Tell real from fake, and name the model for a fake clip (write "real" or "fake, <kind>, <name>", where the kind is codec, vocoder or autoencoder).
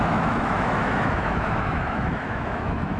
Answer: fake, autoencoder, DAC-VAE